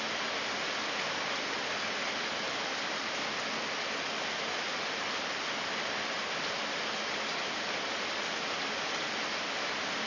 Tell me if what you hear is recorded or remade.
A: recorded